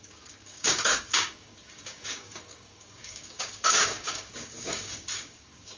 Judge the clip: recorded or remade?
remade